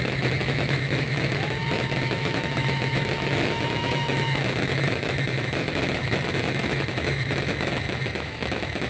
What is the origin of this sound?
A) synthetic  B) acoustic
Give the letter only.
A